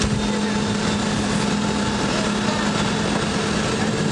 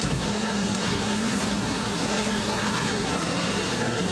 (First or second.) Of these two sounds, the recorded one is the first